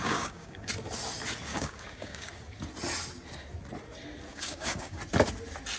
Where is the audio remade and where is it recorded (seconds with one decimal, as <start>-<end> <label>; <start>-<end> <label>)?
0.0-0.7 remade; 0.7-1.5 recorded; 1.5-2.3 remade; 2.3-4.3 recorded; 4.3-5.0 remade; 5.0-5.8 recorded